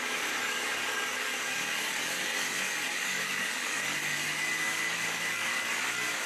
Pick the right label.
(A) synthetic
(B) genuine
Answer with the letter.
A